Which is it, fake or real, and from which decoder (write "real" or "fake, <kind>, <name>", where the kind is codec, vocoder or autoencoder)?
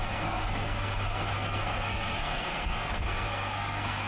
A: fake, codec, SNAC